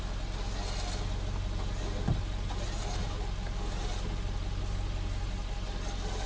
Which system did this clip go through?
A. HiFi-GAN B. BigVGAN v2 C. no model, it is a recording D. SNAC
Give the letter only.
C